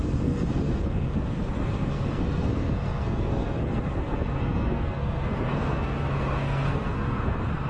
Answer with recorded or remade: remade